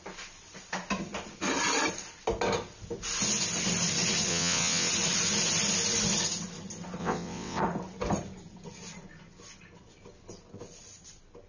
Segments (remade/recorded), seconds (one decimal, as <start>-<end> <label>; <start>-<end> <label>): 0.0-4.3 recorded; 4.3-4.9 remade; 4.9-7.0 recorded; 7.0-7.6 remade; 7.6-11.5 recorded